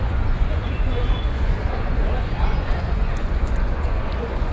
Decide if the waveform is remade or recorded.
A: remade